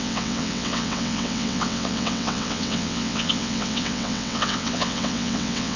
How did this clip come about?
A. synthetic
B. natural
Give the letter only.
A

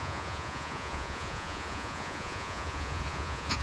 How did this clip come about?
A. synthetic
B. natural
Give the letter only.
A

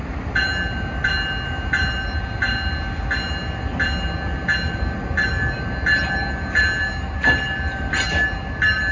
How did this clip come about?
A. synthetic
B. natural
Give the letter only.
B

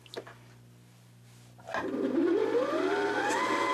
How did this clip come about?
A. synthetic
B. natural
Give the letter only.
B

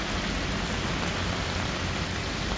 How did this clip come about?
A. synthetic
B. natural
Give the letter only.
B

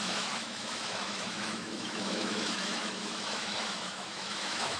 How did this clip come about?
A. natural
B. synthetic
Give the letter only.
B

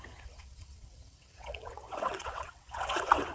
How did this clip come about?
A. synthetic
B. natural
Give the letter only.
A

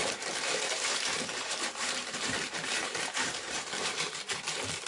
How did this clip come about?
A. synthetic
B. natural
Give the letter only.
A